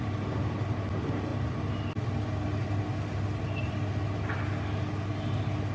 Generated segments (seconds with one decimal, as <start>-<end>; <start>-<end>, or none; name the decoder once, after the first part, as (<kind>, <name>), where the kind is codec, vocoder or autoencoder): none